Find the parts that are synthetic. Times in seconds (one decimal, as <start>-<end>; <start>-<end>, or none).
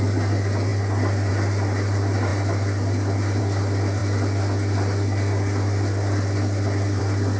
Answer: none